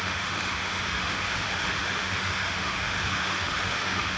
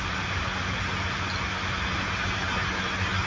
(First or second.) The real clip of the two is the second